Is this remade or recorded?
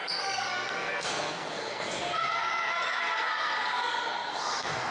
remade